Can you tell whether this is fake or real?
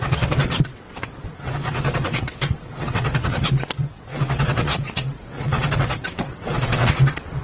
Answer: fake